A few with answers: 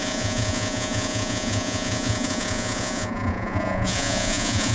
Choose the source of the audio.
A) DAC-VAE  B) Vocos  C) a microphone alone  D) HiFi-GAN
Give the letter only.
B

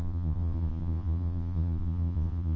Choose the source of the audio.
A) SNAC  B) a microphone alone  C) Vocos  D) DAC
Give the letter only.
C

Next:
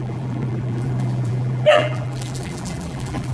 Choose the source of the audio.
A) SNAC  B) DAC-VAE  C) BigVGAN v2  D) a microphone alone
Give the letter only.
C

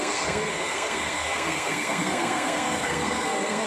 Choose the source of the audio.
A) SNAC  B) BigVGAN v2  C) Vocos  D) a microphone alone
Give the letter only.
A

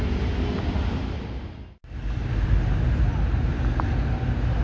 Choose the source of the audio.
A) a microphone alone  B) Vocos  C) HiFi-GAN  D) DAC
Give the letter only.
A